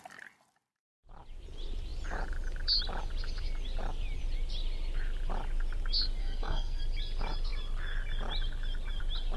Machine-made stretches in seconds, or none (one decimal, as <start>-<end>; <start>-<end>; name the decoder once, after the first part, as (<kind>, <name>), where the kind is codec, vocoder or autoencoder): 6.2-6.8 (codec, SNAC)